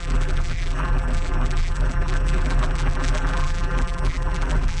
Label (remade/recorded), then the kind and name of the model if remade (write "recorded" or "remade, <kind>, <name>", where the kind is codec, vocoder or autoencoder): remade, vocoder, BigVGAN v2